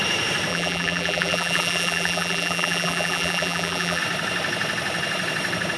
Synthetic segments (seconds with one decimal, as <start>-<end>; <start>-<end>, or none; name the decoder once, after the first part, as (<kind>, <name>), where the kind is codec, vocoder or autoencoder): 0.5-4.0 (vocoder, BigVGAN v2)